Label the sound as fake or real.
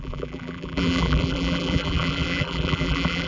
fake